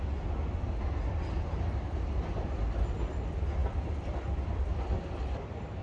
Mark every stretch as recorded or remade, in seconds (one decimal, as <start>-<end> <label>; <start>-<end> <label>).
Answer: 0.0-5.8 recorded